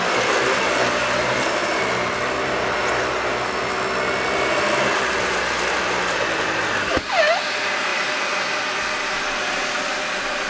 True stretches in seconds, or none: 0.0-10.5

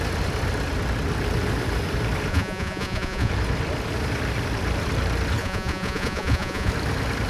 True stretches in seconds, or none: 0.0-2.3; 3.3-5.4; 6.7-7.3

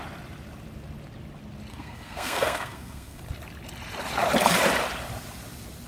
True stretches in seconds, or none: 0.0-1.7; 3.2-5.9

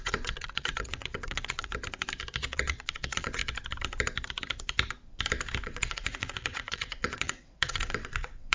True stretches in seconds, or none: 1.7-2.4; 3.4-5.6

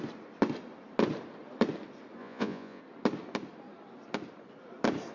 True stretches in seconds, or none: 0.0-2.2; 2.8-5.1